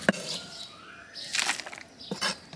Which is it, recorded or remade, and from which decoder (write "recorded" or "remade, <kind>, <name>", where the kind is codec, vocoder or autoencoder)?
recorded